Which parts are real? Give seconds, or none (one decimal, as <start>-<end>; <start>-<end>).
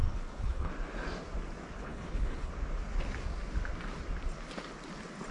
0.7-1.8; 2.5-5.3